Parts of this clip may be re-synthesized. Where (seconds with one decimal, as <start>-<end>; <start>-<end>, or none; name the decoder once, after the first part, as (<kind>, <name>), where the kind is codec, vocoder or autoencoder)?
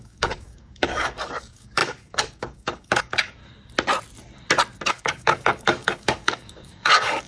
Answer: 0.0-3.4 (codec, DAC); 4.9-7.3